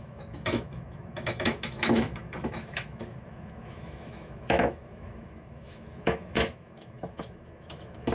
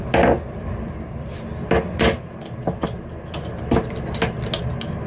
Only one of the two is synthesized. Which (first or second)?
first